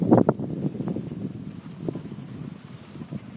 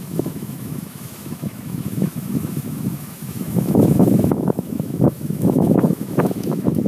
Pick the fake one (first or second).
second